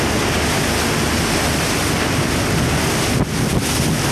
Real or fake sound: real